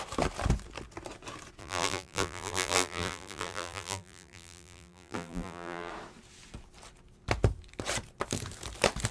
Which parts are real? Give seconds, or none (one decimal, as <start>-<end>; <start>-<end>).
0.0-1.6; 5.9-9.1